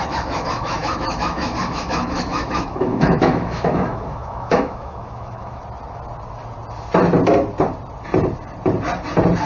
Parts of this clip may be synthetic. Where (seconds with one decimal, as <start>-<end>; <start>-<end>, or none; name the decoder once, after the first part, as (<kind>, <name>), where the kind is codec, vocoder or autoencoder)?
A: 0.0-5.6 (autoencoder, DAC-VAE)